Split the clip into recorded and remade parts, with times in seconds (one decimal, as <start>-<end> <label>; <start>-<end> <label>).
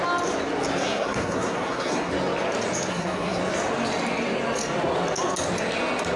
0.0-0.8 recorded; 0.8-2.1 remade; 2.1-2.9 recorded; 2.9-3.4 remade; 3.4-6.2 recorded